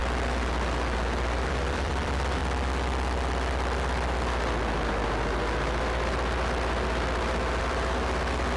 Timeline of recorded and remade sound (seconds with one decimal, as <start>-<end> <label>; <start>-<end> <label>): 0.0-2.4 remade; 2.4-7.6 recorded; 7.6-8.6 remade